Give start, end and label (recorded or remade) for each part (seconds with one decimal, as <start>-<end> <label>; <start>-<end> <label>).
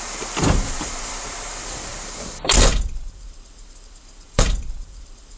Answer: 0.0-5.4 remade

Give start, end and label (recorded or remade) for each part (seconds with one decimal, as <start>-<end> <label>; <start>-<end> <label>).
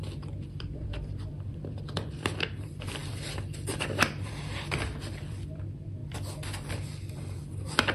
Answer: 0.0-6.0 remade; 6.0-6.7 recorded; 6.7-7.9 remade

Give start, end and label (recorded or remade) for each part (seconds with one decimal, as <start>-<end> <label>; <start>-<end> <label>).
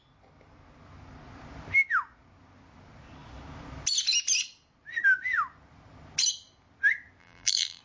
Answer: 0.0-7.2 recorded; 7.2-7.8 remade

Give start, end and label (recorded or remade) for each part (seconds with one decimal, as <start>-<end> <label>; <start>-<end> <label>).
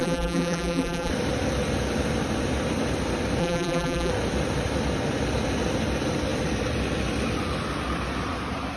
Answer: 0.0-1.1 remade; 1.1-3.4 recorded; 3.4-4.1 remade; 4.1-8.8 recorded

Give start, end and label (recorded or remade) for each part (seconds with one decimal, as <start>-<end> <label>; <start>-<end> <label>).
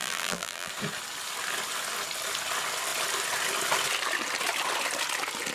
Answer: 0.0-0.7 remade; 0.7-5.5 recorded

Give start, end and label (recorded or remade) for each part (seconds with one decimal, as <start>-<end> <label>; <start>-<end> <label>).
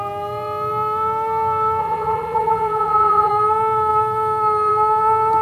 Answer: 0.0-1.8 recorded; 1.8-3.3 remade; 3.3-5.4 recorded